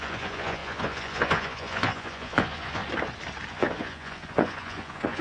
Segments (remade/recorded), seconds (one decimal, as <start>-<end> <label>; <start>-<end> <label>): 0.0-2.8 remade; 2.8-3.5 recorded; 3.5-5.2 remade